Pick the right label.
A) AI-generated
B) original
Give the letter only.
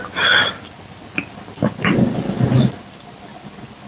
B